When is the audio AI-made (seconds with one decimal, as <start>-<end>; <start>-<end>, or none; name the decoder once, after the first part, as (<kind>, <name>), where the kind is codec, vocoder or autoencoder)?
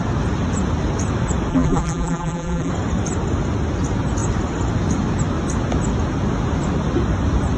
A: 1.5-2.7 (vocoder, BigVGAN v2)